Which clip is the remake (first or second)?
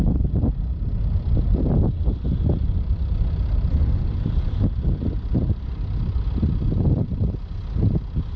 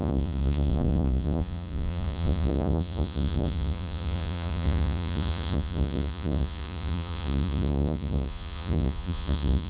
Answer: second